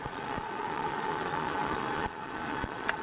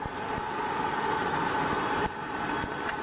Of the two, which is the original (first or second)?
second